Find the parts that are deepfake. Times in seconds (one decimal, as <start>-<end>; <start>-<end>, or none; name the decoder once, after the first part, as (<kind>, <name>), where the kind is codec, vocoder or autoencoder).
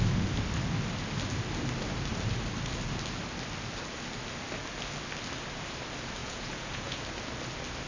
6.2-7.0 (vocoder, Vocos)